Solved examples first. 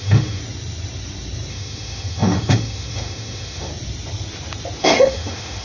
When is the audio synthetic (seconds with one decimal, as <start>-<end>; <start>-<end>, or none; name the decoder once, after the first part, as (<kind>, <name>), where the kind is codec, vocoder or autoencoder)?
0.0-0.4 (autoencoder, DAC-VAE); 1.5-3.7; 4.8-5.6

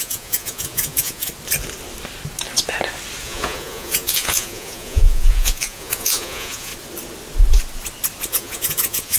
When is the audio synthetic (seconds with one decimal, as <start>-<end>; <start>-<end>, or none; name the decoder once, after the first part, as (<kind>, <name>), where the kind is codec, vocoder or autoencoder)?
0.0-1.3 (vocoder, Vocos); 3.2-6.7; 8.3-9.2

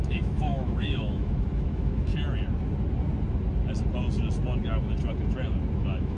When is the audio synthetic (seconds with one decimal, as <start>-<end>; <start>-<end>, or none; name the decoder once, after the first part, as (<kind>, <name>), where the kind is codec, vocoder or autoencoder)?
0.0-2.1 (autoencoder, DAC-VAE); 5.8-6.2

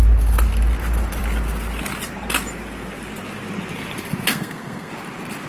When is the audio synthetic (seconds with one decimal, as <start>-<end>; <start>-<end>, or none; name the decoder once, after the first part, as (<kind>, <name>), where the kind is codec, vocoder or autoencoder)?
4.3-4.9 (codec, SNAC)

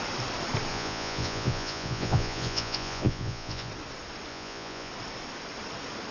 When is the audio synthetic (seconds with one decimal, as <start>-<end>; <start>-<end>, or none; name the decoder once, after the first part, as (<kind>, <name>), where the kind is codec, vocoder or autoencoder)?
0.7-3.7 (vocoder, Vocos); 4.3-4.9

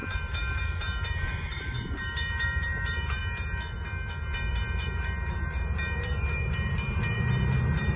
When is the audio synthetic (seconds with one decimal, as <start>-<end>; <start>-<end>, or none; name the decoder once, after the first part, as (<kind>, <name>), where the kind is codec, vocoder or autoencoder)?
0.0-3.2 (vocoder, BigVGAN v2); 4.5-8.0

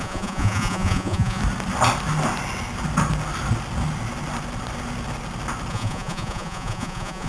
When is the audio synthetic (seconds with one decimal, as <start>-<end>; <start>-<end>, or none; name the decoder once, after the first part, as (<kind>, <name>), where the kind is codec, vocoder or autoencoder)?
0.0-1.4 (vocoder, Vocos); 5.7-7.3

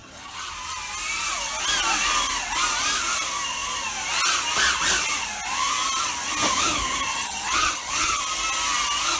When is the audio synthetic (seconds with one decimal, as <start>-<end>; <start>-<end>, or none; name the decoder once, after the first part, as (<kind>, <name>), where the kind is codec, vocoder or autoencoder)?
0.0-0.5 (vocoder, HiFi-GAN); 7.1-8.2